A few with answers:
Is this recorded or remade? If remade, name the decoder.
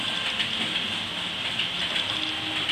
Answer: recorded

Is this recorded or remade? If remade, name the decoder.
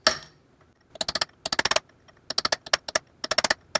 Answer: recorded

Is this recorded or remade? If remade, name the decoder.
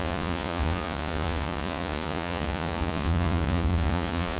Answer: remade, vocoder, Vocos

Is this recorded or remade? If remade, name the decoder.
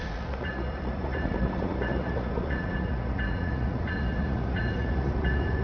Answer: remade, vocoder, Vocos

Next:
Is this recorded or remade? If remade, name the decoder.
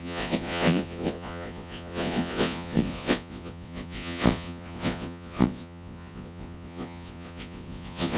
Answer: remade, vocoder, Vocos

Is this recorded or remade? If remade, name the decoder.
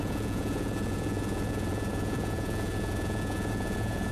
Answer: remade, vocoder, Vocos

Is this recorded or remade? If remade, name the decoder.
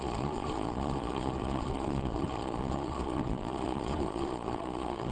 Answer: remade, vocoder, Vocos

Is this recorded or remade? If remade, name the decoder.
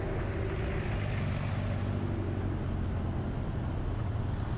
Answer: recorded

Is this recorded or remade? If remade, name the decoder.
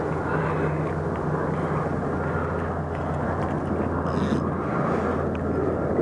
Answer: recorded